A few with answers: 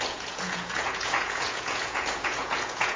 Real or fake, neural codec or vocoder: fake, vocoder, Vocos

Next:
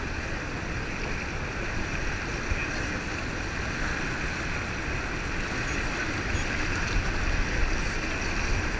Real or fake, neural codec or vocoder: real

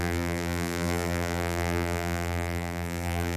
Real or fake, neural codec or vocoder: fake, vocoder, BigVGAN v2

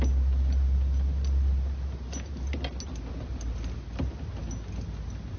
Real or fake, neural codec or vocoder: real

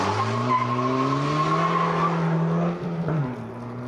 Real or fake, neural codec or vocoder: real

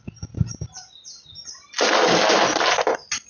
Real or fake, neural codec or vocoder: real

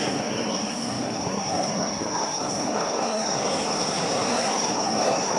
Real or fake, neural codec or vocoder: fake, codec, SNAC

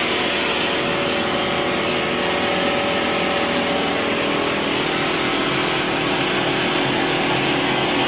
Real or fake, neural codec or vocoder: real